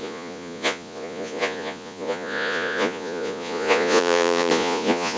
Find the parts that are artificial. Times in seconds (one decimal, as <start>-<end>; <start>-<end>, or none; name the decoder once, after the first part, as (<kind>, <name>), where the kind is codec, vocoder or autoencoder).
0.0-5.2 (vocoder, Vocos)